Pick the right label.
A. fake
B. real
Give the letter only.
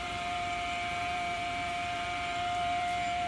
A